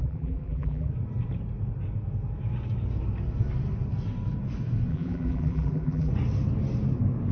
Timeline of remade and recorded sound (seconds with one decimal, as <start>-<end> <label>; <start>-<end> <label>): 0.0-0.9 remade; 0.9-4.9 recorded; 4.9-6.1 remade; 6.1-7.3 recorded